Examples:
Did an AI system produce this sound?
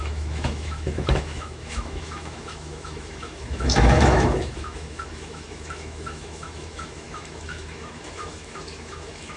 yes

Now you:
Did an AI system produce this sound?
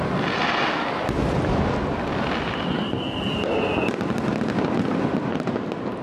no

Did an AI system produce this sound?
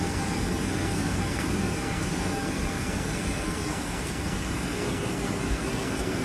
yes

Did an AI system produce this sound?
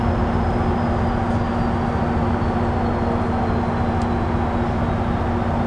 no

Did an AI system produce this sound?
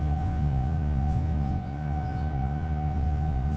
yes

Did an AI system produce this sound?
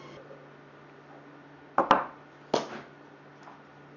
no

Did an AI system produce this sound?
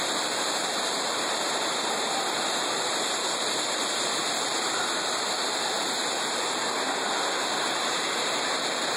yes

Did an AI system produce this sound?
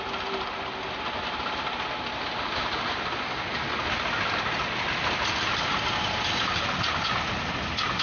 no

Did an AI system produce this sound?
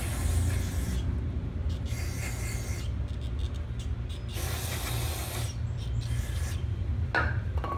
no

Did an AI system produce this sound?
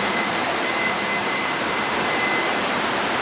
yes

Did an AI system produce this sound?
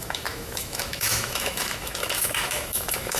yes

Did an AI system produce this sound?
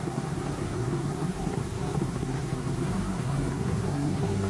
yes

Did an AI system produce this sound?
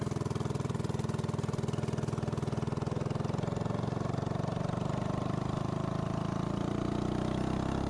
no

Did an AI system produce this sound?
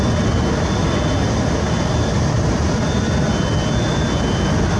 no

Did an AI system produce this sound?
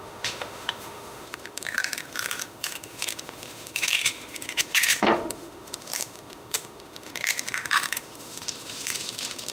yes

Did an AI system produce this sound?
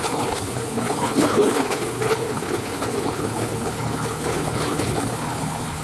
yes